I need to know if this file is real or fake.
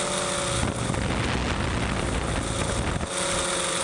real